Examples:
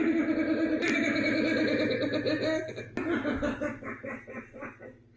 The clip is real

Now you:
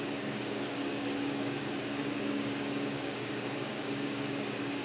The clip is fake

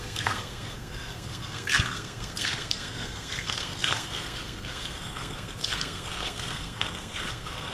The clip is fake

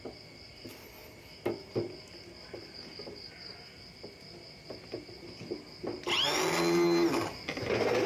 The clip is real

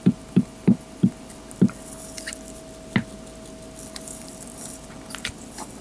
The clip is real